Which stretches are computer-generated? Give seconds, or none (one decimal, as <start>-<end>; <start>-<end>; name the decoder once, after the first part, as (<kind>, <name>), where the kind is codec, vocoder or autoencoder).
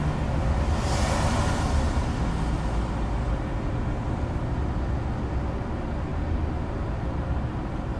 none